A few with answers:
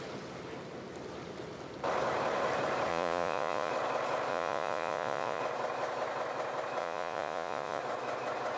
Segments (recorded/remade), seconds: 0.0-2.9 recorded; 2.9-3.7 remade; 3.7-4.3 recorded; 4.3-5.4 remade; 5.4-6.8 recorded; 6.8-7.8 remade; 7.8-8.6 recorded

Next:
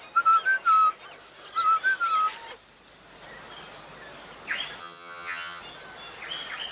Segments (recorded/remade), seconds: 0.0-4.8 recorded; 4.8-5.6 remade; 5.6-6.7 recorded